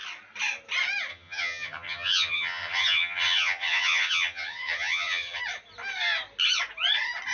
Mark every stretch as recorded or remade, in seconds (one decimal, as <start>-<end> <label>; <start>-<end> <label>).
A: 0.0-1.1 recorded; 1.1-5.4 remade; 5.4-7.3 recorded